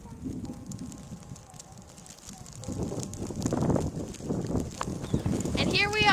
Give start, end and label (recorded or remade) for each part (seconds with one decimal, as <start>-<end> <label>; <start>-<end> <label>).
0.0-6.1 recorded